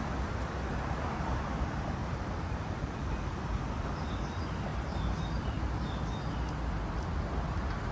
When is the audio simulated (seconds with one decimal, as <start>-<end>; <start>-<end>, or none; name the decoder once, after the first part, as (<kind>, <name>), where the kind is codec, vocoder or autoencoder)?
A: 2.0-3.9 (vocoder, BigVGAN v2); 4.7-5.6